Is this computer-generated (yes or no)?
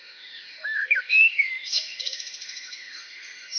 yes